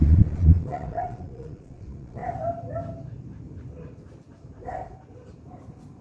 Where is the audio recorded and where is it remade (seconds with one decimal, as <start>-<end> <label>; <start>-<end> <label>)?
0.0-2.2 remade; 2.2-6.0 recorded